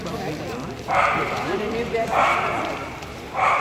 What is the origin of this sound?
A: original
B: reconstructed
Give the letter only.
B